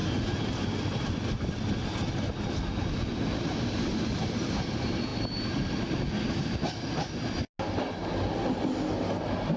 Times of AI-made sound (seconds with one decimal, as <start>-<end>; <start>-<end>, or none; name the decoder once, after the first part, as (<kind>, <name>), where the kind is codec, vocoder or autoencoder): 0.0-1.5 (vocoder, BigVGAN v2); 3.1-3.9